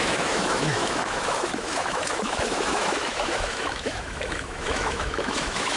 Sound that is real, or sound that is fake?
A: fake